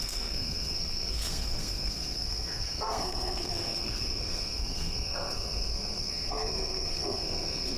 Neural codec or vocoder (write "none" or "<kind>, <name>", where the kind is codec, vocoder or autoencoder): codec, SNAC